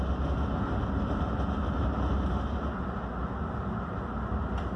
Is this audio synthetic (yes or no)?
no